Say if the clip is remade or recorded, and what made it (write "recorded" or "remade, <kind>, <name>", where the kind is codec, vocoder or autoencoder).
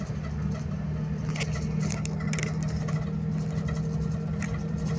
recorded